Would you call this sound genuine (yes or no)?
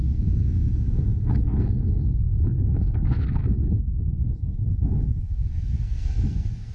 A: no